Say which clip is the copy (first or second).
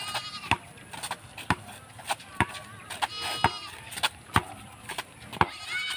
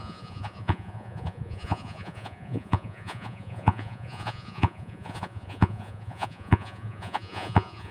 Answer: second